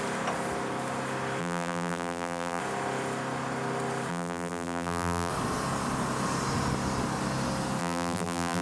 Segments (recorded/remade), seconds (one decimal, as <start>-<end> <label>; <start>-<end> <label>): 0.0-1.4 recorded; 1.4-2.6 remade; 2.6-4.1 recorded; 4.1-5.3 remade; 5.3-7.8 recorded; 7.8-8.6 remade